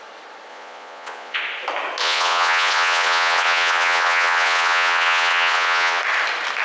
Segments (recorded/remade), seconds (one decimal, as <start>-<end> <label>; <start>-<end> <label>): 0.0-0.5 recorded; 0.5-1.4 remade; 1.4-2.0 recorded; 2.0-6.0 remade; 6.0-6.6 recorded